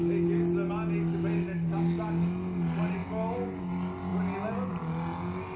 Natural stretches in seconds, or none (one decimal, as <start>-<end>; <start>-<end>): 0.0-3.0; 3.6-5.6